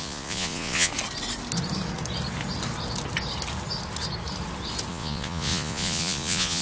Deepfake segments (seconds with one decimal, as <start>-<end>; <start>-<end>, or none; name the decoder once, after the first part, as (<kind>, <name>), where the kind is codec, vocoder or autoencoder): 0.0-0.9 (vocoder, Vocos); 4.9-6.6